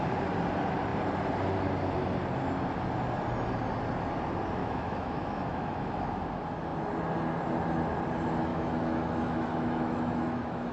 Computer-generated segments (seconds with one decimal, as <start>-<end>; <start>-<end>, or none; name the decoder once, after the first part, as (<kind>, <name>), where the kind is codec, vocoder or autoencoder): 4.6-6.2 (autoencoder, DAC-VAE); 8.5-10.7